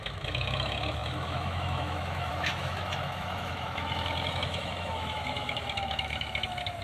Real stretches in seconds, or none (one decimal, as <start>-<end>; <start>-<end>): none